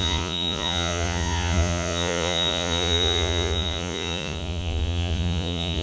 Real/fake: fake